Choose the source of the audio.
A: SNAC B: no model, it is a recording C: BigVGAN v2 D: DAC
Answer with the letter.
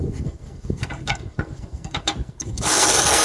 A